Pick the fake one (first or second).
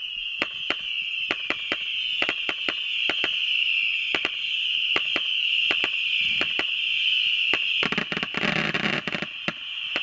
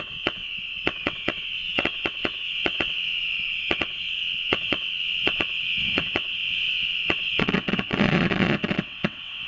second